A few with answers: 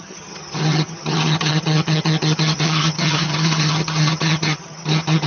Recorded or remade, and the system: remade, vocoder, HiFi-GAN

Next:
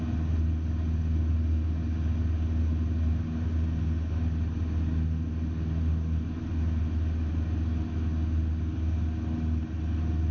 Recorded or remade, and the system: recorded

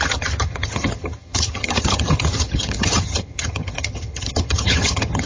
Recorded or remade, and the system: remade, vocoder, HiFi-GAN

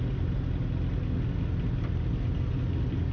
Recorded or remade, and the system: recorded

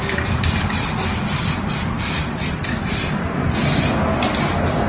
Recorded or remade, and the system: recorded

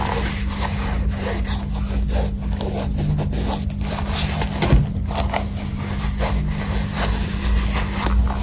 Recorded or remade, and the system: recorded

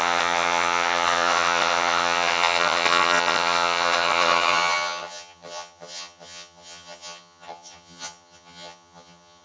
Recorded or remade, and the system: remade, vocoder, HiFi-GAN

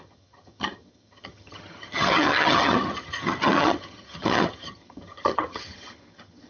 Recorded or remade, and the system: remade, vocoder, HiFi-GAN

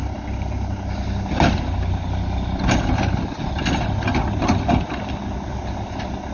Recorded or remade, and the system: recorded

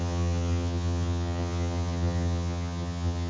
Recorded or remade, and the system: remade, vocoder, HiFi-GAN